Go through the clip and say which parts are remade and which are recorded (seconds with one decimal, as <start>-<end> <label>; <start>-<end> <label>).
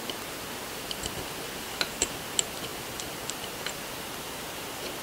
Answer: 0.0-2.7 recorded; 2.7-3.5 remade; 3.5-5.0 recorded